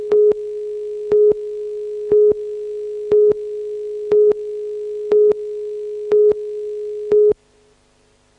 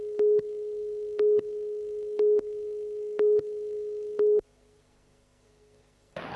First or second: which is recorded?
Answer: first